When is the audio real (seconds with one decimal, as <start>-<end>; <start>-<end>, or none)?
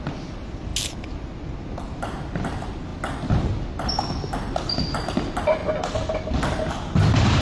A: 0.0-7.4